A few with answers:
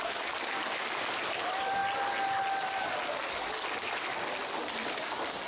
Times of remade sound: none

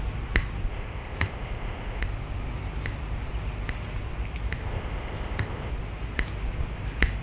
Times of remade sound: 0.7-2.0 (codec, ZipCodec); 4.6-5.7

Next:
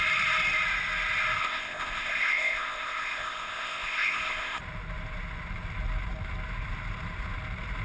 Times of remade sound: 1.4-4.6 (codec, ZipCodec)

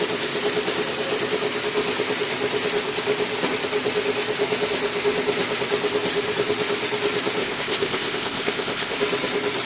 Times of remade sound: 7.4-9.0 (codec, ZipCodec)

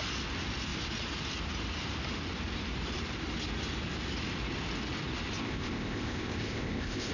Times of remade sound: 5.4-7.1 (codec, ZipCodec)